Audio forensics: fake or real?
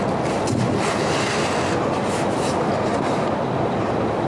real